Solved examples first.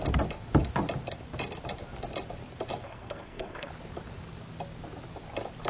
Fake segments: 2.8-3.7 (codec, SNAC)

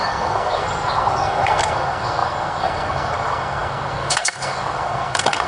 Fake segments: 0.0-5.5 (codec, SNAC)

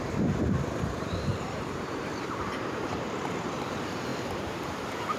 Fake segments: 0.0-5.2 (vocoder, BigVGAN v2)

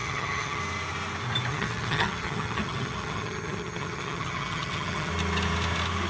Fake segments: 0.0-0.6 (vocoder, HiFi-GAN); 1.5-5.1